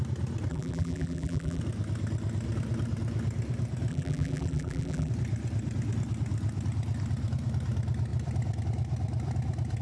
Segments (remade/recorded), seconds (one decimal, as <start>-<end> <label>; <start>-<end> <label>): 0.0-0.5 recorded; 0.5-1.6 remade; 1.6-3.9 recorded; 3.9-5.1 remade; 5.1-9.8 recorded